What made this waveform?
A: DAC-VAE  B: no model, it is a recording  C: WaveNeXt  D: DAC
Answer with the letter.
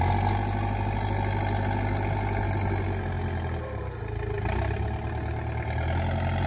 B